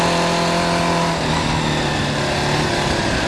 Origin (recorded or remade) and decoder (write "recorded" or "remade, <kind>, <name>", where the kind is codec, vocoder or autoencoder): recorded